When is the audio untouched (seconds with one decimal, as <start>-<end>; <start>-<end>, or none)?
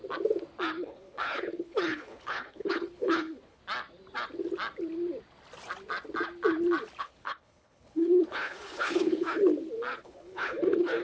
0.0-0.8; 3.6-7.0; 9.5-10.0